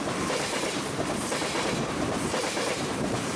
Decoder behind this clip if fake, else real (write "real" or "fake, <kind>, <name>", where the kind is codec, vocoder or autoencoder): fake, vocoder, BigVGAN v2